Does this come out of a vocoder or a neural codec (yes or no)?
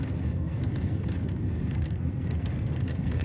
yes